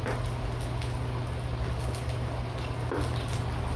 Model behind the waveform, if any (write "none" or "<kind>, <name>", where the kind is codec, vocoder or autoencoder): none